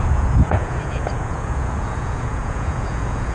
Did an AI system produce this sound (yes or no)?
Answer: yes